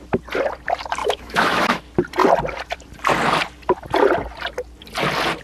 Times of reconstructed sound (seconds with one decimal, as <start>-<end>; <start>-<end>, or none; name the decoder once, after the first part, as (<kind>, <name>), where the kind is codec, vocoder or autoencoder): 1.0-1.8 (autoencoder, DAC-VAE)